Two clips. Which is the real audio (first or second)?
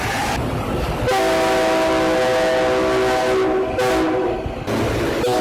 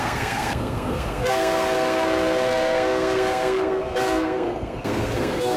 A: first